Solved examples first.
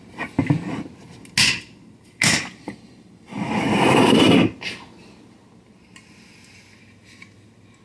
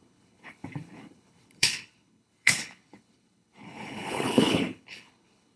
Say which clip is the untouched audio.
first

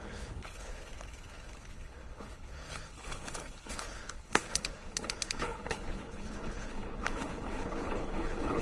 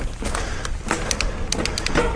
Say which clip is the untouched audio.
second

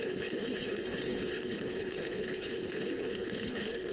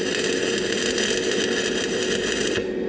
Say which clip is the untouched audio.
second